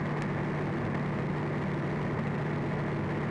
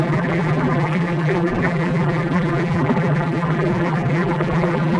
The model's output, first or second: second